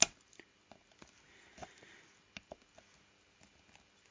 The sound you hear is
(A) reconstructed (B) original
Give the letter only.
B